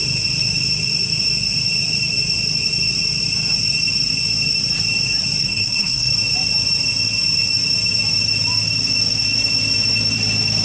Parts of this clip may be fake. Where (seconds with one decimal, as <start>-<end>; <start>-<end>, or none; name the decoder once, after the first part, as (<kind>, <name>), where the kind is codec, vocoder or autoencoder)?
5.4-6.1 (codec, SNAC)